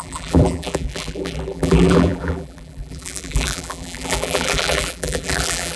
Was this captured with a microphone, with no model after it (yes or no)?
no